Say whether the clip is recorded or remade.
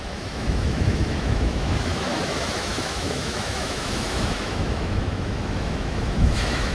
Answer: remade